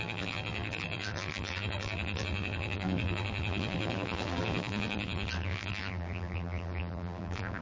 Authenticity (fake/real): fake